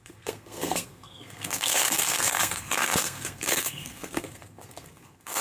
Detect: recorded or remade remade